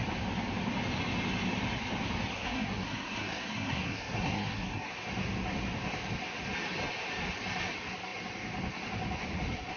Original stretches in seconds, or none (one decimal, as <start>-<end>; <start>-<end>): 0.0-2.3; 4.9-9.8